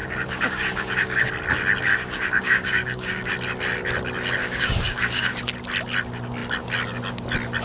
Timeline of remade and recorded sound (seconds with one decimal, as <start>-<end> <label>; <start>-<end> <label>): 0.0-1.3 remade; 1.3-1.9 recorded; 1.9-3.3 remade; 3.3-4.4 recorded; 4.4-5.4 remade; 5.4-7.6 recorded